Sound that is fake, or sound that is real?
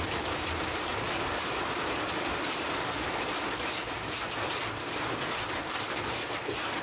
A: fake